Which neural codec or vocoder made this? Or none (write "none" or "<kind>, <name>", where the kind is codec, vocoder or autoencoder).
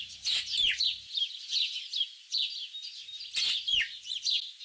none